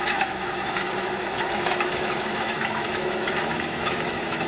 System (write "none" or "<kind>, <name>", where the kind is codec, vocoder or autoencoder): autoencoder, DAC-VAE